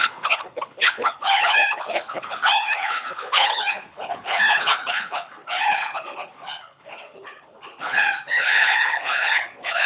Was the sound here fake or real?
fake